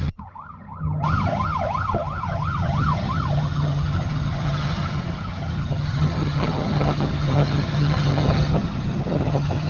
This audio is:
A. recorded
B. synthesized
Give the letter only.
B